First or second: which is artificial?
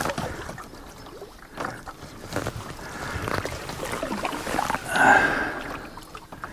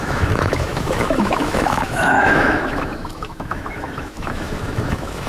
second